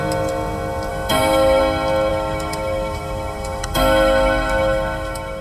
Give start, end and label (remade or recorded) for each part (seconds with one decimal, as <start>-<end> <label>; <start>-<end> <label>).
0.0-0.9 recorded; 0.9-1.6 remade; 1.6-2.1 recorded; 2.1-5.4 remade